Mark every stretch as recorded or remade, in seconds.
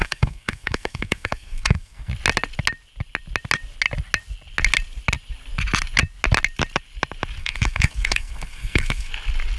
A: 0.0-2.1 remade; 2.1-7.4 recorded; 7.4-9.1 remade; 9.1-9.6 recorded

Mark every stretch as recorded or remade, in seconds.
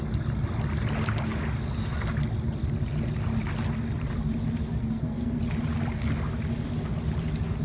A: 0.0-4.8 recorded; 4.8-5.4 remade; 5.4-7.6 recorded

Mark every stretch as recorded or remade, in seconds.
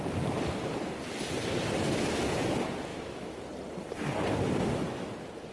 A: 0.0-2.9 recorded; 2.9-3.4 remade; 3.4-5.5 recorded